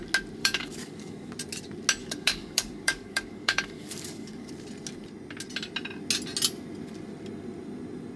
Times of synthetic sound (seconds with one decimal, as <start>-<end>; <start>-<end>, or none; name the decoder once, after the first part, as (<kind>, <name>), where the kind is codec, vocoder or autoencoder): 0.4-1.3 (codec, DAC); 2.0-4.5